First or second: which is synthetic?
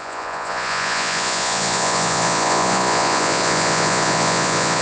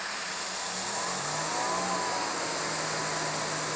first